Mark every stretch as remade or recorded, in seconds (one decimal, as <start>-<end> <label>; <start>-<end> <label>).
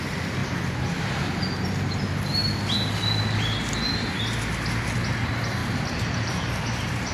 0.0-0.4 recorded; 0.4-0.9 remade; 0.9-5.6 recorded; 5.6-6.5 remade; 6.5-7.1 recorded